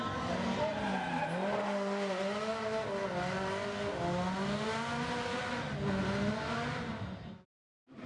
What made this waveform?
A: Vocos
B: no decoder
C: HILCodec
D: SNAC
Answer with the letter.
B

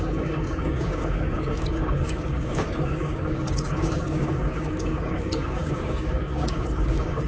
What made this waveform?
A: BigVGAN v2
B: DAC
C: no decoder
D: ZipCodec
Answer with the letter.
B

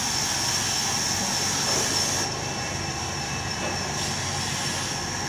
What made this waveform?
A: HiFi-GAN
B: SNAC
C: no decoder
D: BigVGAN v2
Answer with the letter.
C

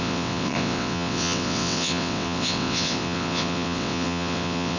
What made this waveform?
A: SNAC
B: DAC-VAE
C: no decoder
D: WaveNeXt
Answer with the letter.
D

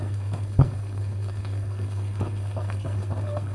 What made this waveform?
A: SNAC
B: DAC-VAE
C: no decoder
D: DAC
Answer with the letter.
A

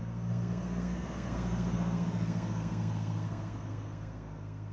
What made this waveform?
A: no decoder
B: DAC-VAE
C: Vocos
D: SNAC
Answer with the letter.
D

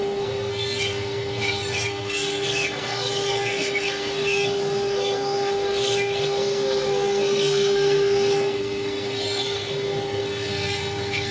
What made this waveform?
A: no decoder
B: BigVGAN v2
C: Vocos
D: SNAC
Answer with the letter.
D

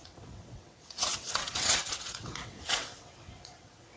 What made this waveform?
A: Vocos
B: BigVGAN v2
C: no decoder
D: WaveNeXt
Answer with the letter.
D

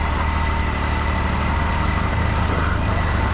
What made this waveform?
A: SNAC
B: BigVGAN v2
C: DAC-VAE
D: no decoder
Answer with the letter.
B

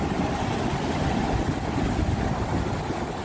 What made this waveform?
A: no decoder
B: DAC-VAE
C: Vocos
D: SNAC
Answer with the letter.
A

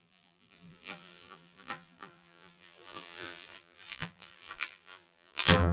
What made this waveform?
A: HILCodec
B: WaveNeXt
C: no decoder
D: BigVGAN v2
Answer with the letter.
D